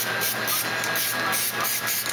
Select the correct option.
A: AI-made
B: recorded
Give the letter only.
B